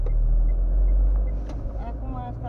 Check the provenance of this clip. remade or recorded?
recorded